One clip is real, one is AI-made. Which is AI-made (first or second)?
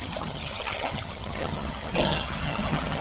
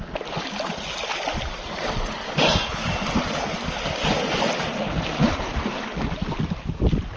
first